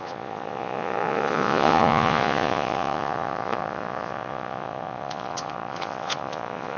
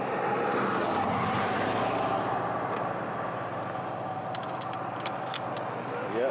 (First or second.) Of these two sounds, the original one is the second